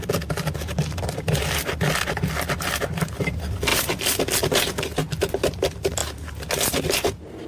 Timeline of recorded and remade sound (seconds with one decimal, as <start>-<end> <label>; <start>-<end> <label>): 0.0-7.5 recorded